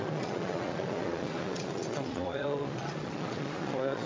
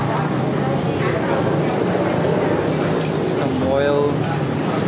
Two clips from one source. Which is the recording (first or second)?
second